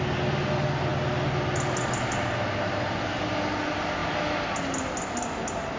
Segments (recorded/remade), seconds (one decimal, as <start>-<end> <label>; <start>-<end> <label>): 0.0-5.8 recorded